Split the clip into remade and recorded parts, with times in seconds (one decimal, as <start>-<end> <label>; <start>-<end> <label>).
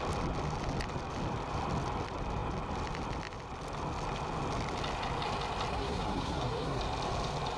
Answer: 0.0-5.7 recorded; 5.7-6.8 remade; 6.8-7.6 recorded